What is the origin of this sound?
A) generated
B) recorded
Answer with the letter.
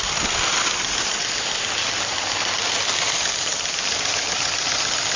B